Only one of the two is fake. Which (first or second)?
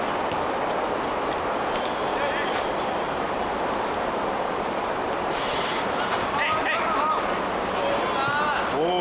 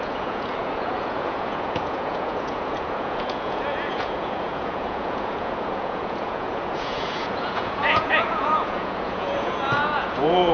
second